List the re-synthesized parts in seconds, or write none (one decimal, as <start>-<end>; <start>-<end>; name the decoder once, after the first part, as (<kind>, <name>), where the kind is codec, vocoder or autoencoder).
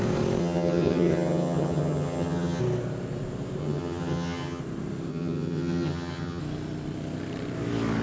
0.4-2.6 (vocoder, HiFi-GAN); 3.6-4.6; 5.1-6.4